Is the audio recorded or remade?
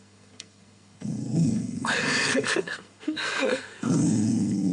remade